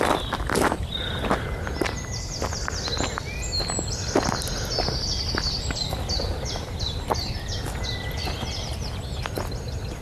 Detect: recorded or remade recorded